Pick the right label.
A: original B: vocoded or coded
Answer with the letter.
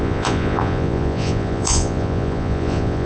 B